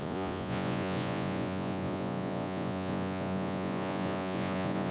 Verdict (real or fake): fake